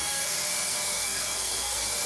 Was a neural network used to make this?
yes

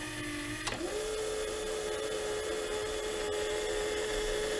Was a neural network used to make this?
no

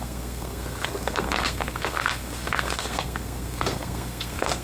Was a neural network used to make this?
yes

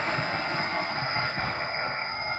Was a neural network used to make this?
yes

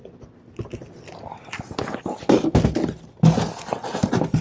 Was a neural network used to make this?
no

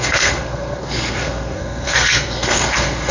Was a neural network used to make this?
yes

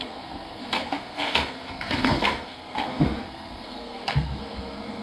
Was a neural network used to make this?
yes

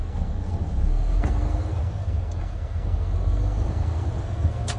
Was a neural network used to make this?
yes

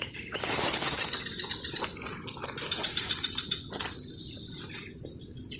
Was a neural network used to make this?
no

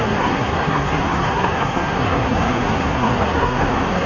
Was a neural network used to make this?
yes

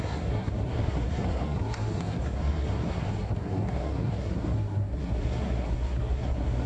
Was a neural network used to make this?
yes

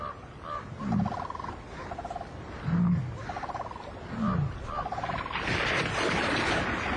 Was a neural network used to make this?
no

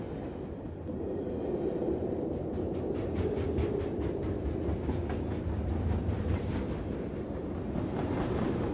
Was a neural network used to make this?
no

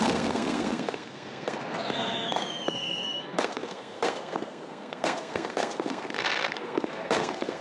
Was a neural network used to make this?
yes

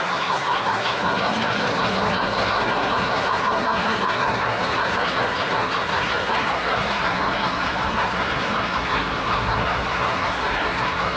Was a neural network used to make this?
yes